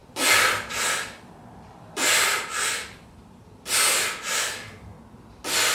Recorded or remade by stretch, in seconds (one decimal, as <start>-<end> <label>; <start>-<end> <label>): 0.0-3.4 remade; 3.4-5.7 recorded

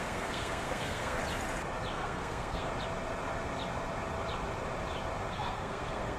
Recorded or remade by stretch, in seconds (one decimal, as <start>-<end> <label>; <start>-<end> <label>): 0.0-1.2 remade; 1.2-1.9 recorded; 1.9-2.7 remade; 2.7-5.3 recorded; 5.3-6.2 remade

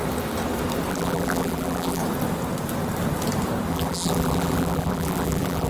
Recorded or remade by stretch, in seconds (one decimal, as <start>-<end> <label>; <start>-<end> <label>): 0.0-0.9 recorded; 0.9-2.0 remade; 2.0-3.7 recorded; 3.7-5.7 remade

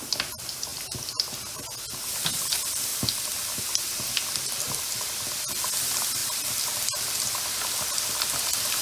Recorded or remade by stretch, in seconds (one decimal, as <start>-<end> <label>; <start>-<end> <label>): 0.0-8.8 recorded

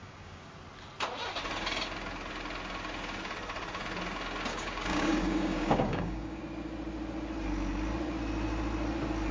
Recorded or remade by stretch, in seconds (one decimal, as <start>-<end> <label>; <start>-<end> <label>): 0.0-0.5 remade; 0.5-4.5 recorded; 4.5-6.4 remade; 6.4-9.3 recorded